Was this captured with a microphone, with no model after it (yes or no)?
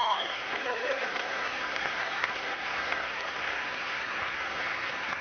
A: no